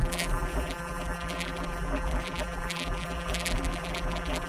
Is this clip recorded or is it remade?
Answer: remade